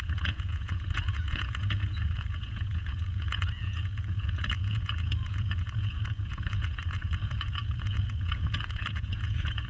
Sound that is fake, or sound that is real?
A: fake